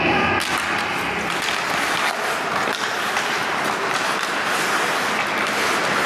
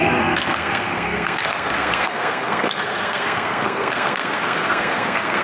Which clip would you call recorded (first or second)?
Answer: first